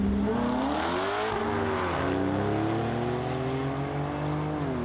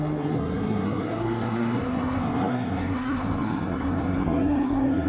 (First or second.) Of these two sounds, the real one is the first